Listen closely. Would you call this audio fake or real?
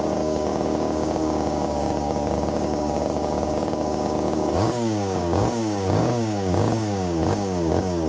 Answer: fake